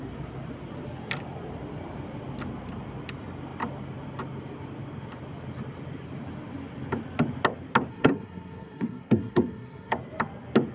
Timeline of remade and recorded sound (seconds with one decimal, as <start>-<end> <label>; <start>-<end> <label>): 0.0-7.9 recorded; 7.9-9.9 remade; 9.9-10.7 recorded